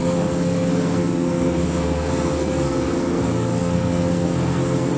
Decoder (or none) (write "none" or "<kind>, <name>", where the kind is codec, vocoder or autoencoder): codec, SNAC